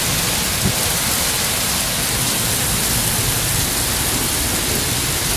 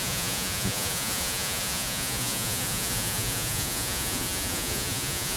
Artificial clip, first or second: second